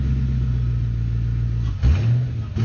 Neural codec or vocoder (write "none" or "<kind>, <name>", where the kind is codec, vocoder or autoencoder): none